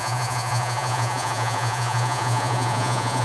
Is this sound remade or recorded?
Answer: remade